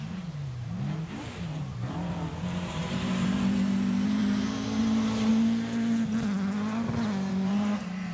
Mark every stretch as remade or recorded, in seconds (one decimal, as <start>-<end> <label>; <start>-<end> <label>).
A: 0.0-4.2 remade; 4.2-4.8 recorded; 4.8-5.3 remade; 5.3-7.3 recorded; 7.3-8.1 remade